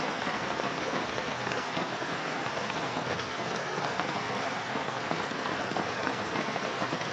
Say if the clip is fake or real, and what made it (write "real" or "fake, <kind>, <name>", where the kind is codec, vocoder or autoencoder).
fake, codec, SNAC